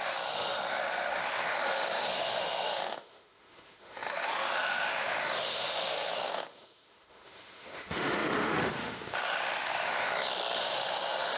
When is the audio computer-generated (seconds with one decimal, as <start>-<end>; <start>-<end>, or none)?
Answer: 0.0-10.1; 10.6-11.4